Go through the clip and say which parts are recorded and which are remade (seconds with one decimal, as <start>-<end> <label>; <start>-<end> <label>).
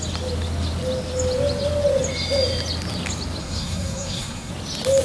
0.0-3.4 recorded; 3.4-4.5 remade; 4.5-5.0 recorded